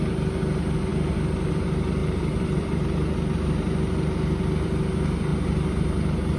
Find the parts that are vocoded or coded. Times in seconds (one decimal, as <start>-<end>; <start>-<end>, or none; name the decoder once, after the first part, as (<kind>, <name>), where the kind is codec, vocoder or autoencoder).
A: 2.0-2.9 (vocoder, BigVGAN v2)